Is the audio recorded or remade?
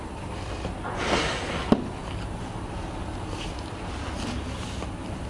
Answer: recorded